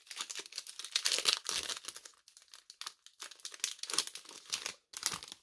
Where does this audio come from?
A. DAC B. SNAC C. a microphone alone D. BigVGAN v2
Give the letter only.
C